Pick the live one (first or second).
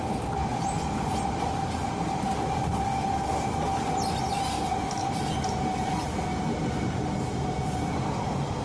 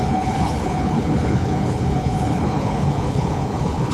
first